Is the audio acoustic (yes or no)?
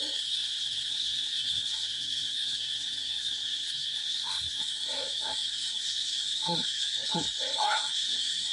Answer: no